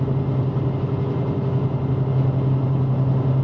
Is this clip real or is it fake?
real